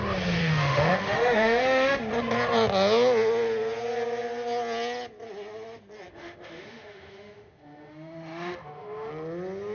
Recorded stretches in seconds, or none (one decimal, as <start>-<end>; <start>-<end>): 0.0-0.4; 2.0-6.1; 9.1-9.7